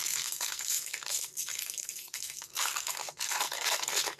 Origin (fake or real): fake